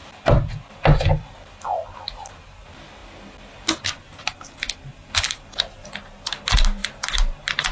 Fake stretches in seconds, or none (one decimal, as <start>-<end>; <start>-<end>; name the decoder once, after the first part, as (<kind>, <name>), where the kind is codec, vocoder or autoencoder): 0.0-1.6 (vocoder, BigVGAN v2); 4.9-5.5